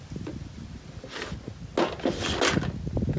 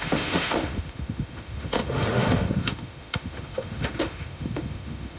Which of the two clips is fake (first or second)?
second